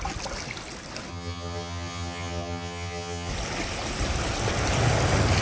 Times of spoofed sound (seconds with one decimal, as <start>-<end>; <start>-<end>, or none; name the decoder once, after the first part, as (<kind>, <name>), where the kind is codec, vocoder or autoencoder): 1.1-3.3 (vocoder, HiFi-GAN)